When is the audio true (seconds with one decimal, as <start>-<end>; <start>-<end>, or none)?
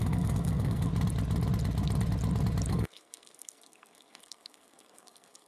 0.9-2.7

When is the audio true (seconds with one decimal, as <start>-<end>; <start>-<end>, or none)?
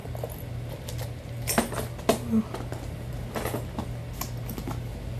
0.0-5.2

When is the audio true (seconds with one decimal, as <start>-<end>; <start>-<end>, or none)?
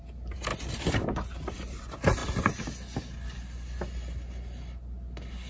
0.0-5.5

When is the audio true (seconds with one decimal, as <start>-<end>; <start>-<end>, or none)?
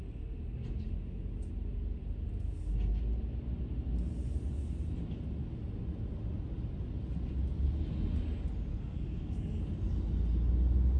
0.0-8.7; 9.6-11.0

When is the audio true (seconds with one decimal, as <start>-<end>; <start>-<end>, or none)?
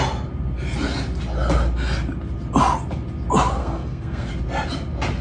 0.0-3.6; 4.3-5.2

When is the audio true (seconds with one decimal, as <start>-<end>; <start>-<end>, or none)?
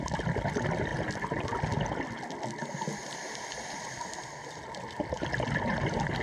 0.0-6.2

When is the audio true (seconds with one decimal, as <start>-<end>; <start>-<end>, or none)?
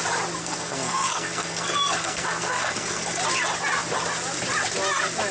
0.0-0.4; 3.2-5.3